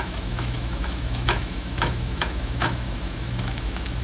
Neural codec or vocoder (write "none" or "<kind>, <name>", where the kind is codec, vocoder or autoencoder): autoencoder, DAC-VAE